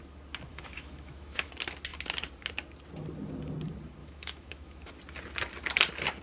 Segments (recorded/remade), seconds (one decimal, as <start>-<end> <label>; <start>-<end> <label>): 0.0-0.5 recorded; 0.5-1.5 remade; 1.5-4.0 recorded; 4.0-4.9 remade; 4.9-6.2 recorded